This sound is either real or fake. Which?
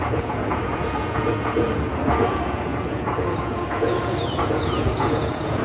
fake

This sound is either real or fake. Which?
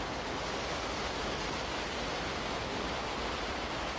real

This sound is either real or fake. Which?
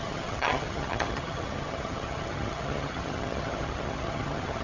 fake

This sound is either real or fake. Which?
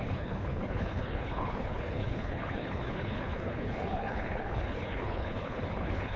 fake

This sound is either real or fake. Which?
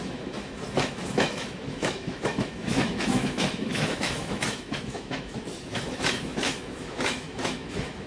fake